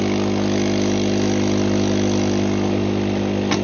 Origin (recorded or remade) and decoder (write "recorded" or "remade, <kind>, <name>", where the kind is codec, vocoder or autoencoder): recorded